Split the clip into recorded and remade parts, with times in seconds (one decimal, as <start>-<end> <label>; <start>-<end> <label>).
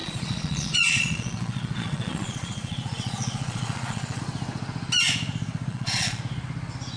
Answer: 0.0-4.2 remade; 4.2-5.7 recorded; 5.7-6.2 remade; 6.2-7.0 recorded